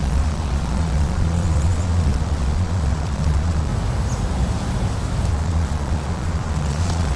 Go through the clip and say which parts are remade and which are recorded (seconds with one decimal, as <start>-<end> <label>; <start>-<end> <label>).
0.0-3.7 remade; 3.7-5.3 recorded; 5.3-7.2 remade